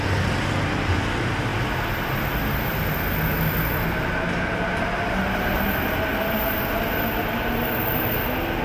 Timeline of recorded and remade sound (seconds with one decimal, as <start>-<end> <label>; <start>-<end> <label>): 0.0-8.6 recorded